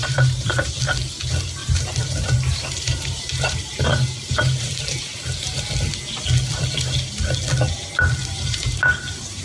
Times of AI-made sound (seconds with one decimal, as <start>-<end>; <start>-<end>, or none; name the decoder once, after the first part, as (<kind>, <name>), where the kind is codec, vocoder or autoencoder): 0.0-0.7 (vocoder, BigVGAN v2); 1.6-5.0; 8.2-8.8

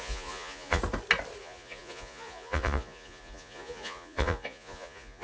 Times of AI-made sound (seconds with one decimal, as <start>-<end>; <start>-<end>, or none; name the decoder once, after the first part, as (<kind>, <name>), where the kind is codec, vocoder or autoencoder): 0.0-0.8 (vocoder, Vocos); 1.4-5.2

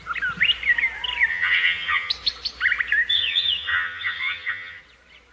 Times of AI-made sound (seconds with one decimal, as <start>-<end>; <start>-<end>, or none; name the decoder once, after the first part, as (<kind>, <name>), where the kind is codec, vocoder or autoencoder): 1.3-2.1 (vocoder, HiFi-GAN); 3.1-4.8

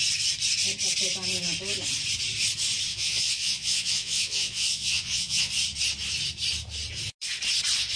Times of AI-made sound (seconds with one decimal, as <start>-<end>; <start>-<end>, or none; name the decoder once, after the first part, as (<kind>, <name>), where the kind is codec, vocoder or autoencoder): 2.9-5.5 (vocoder, Vocos)

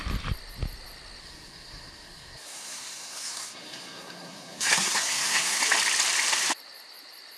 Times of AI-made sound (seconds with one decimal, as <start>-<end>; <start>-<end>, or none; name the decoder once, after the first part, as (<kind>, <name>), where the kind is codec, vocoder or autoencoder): 1.2-5.6 (codec, SNAC)

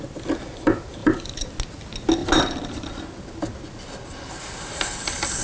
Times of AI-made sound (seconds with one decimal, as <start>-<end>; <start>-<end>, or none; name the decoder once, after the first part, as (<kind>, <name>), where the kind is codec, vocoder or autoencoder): 1.0-1.5 (vocoder, BigVGAN v2); 2.2-2.9